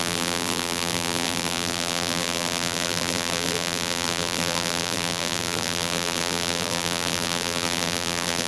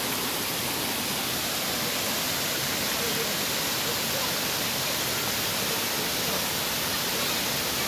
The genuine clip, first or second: second